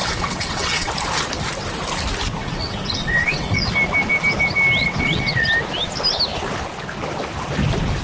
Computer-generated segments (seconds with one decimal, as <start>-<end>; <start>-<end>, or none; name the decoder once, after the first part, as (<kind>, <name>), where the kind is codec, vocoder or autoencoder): 0.0-0.9 (vocoder, WaveNeXt); 2.4-3.7; 4.8-5.5